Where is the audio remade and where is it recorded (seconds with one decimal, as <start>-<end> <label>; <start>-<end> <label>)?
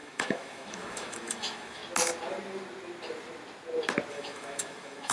0.0-1.8 remade; 1.8-4.1 recorded; 4.1-5.1 remade